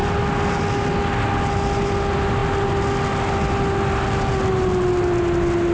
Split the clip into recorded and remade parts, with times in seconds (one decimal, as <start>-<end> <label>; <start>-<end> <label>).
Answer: 0.0-5.7 recorded